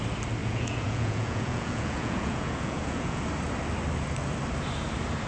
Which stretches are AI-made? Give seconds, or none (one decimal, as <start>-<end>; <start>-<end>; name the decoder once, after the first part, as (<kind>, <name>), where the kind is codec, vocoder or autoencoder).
0.4-3.2 (vocoder, Vocos)